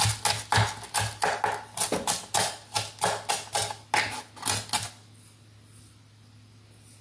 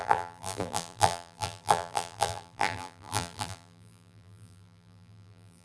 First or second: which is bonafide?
first